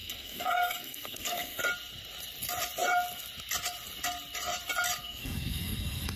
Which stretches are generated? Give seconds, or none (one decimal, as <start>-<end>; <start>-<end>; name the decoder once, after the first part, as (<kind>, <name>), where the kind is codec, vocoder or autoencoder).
0.0-1.6 (codec, SNAC); 5.0-6.2

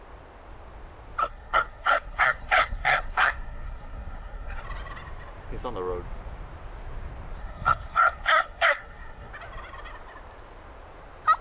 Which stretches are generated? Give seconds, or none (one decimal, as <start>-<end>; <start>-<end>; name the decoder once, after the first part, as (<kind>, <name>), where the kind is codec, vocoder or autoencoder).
1.2-4.6 (codec, SNAC); 7.4-9.3